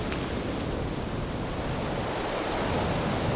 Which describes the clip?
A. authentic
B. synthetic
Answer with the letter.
A